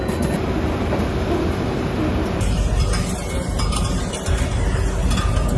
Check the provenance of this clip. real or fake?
real